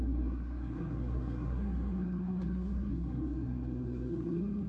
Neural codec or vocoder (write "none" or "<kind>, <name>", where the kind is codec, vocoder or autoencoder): codec, SNAC